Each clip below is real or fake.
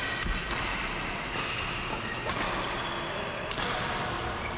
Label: real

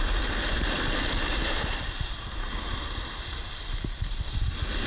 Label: real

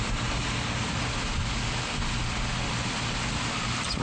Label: real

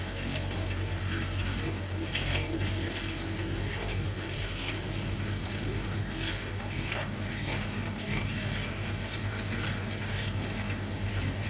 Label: fake